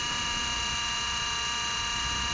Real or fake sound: real